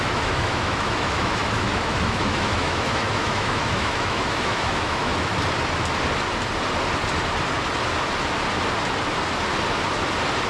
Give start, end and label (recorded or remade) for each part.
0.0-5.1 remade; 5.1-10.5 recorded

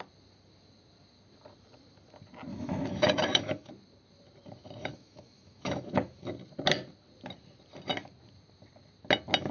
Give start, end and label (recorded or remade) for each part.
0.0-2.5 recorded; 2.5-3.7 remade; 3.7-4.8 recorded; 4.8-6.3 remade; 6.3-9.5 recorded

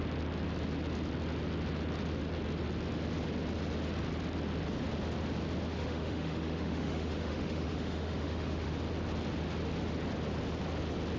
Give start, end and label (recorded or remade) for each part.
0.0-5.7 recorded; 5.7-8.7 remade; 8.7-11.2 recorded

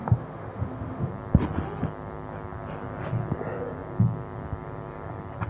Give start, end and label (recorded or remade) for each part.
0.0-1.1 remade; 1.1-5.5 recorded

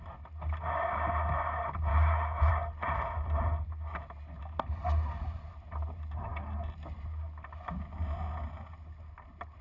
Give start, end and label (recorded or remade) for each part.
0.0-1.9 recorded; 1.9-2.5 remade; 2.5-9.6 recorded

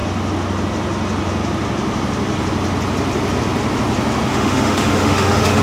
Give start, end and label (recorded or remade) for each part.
0.0-4.3 recorded; 4.3-5.6 remade